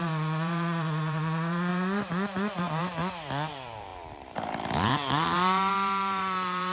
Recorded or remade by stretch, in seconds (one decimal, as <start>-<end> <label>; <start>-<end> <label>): 0.0-3.0 remade; 3.0-3.5 recorded; 3.5-6.7 remade